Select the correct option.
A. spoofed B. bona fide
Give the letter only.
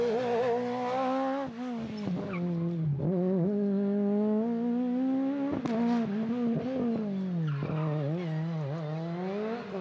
B